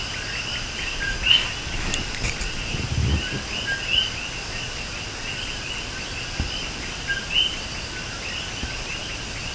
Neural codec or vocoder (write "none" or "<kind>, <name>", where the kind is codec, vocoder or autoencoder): none